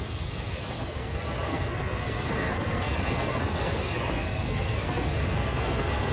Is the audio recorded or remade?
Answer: remade